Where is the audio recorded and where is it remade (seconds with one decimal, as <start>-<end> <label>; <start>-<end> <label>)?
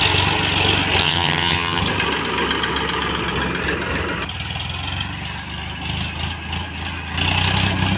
0.0-1.0 recorded; 1.0-1.8 remade; 1.8-8.0 recorded